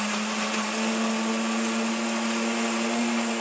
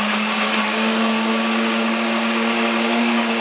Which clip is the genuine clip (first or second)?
first